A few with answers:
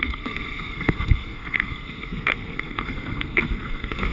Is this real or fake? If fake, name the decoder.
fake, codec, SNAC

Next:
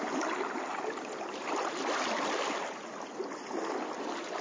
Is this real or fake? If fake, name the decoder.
real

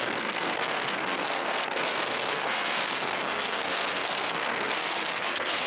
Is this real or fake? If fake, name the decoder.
fake, codec, SNAC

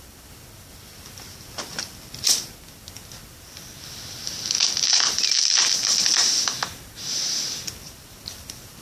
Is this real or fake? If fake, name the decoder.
real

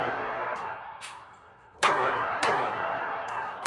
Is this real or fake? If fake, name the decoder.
fake, codec, SNAC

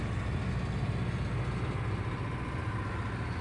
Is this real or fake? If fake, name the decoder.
real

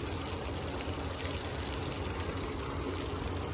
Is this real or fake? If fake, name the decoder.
real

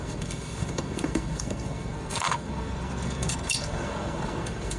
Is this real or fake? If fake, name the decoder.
fake, codec, SNAC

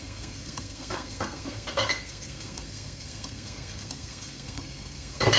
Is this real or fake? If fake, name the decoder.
fake, codec, SNAC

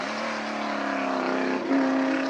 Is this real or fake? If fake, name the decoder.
real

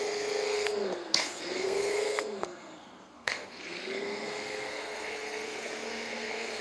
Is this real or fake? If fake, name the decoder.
fake, codec, SNAC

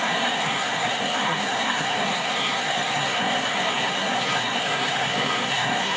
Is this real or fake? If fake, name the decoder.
fake, codec, SNAC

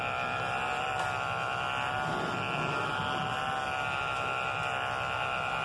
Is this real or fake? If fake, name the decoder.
real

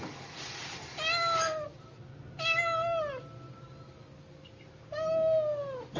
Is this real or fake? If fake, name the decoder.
real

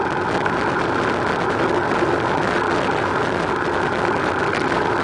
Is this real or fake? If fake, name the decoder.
real